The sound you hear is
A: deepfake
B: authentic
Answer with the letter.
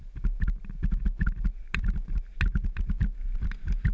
B